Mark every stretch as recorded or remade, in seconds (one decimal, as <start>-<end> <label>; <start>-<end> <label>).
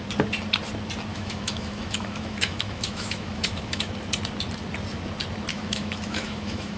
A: 0.0-1.1 recorded; 1.1-3.9 remade; 3.9-5.5 recorded; 5.5-6.8 remade